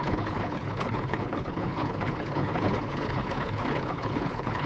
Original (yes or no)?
no